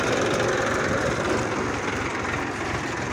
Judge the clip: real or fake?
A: real